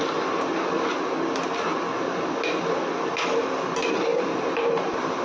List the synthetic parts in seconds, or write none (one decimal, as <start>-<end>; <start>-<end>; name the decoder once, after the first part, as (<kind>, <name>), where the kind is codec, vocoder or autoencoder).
1.7-2.4 (vocoder, BigVGAN v2); 4.1-5.2

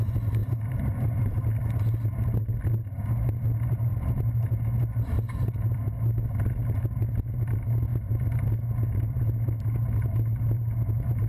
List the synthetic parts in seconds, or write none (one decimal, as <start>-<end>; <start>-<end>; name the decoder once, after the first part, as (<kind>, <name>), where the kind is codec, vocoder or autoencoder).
0.4-1.4 (vocoder, BigVGAN v2)